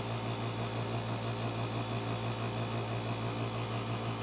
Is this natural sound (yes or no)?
yes